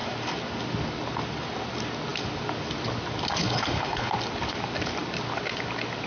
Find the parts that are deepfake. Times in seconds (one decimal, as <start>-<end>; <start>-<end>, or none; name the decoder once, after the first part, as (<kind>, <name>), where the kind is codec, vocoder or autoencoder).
3.4-4.1 (codec, HILCodec)